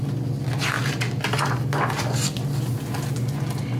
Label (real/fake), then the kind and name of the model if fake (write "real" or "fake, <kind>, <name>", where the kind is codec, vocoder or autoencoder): real